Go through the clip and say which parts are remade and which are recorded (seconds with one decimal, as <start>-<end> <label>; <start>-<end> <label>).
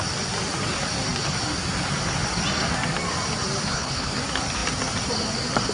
0.0-3.6 recorded; 3.6-4.1 remade; 4.1-5.7 recorded